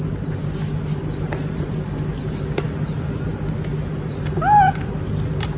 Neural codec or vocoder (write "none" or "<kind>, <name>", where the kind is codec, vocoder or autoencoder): none